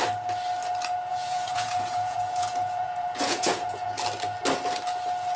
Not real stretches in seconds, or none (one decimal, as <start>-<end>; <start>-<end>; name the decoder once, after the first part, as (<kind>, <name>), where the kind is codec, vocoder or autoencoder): 1.1-3.9 (vocoder, Vocos)

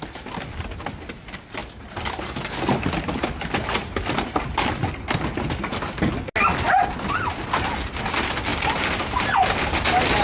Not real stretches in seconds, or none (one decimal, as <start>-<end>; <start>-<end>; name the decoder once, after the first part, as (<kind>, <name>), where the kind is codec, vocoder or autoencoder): 8.5-9.7 (vocoder, BigVGAN v2)